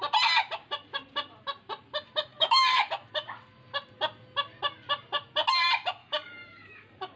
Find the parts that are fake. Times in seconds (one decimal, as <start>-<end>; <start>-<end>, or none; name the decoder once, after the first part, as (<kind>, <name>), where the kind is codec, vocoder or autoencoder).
2.3-2.9 (codec, DAC); 6.0-7.2